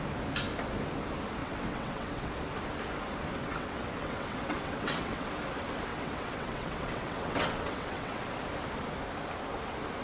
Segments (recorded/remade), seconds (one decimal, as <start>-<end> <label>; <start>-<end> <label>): 0.0-1.4 recorded; 1.4-2.3 remade; 2.3-3.4 recorded; 3.4-5.3 remade; 5.3-5.9 recorded; 5.9-8.2 remade; 8.2-10.0 recorded